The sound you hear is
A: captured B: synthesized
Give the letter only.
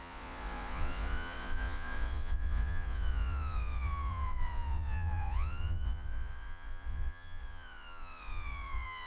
B